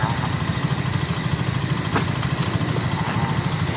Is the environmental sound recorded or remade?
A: recorded